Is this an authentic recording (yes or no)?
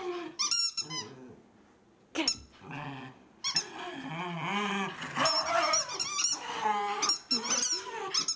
yes